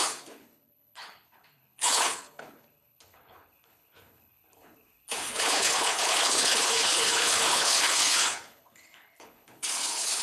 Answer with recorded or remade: remade